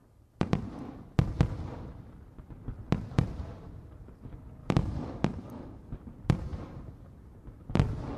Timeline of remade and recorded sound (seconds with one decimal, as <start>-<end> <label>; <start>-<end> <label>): 0.0-4.6 recorded; 4.6-5.9 remade; 5.9-8.2 recorded